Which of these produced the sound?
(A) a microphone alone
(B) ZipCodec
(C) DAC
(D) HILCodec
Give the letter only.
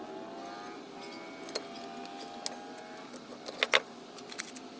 A